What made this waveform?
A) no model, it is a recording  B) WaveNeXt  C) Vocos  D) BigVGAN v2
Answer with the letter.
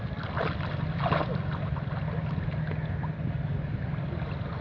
A